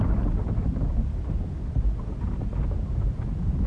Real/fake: real